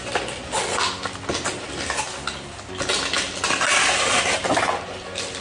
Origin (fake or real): real